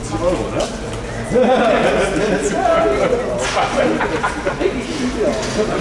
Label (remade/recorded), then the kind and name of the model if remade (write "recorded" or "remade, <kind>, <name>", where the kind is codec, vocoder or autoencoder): recorded